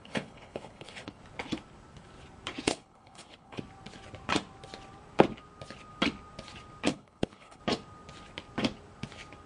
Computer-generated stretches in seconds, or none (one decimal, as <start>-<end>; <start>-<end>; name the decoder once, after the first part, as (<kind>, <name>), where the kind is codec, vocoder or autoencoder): 0.0-1.2 (codec, HILCodec); 2.7-3.6; 6.9-7.6